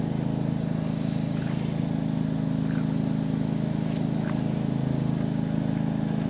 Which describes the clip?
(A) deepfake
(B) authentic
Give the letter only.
B